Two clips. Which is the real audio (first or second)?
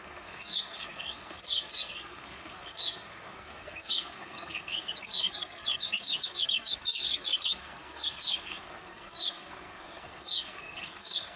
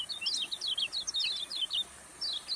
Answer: second